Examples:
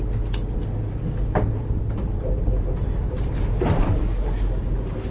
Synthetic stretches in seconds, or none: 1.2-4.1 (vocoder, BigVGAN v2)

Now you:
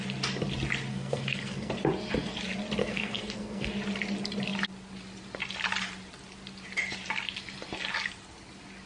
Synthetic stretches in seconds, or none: 0.9-1.7 (codec, SNAC); 2.8-3.7